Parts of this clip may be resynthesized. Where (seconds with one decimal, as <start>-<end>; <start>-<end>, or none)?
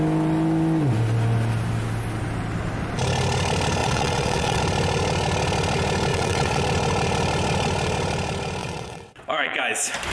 3.8-4.6; 6.1-6.6; 8.6-9.6